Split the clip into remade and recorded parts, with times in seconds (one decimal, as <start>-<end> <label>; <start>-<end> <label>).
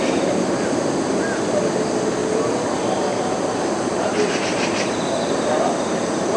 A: 0.0-2.2 recorded; 2.2-4.4 remade; 4.4-6.4 recorded